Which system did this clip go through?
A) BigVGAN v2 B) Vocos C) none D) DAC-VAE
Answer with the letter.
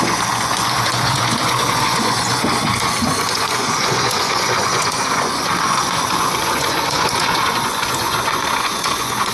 B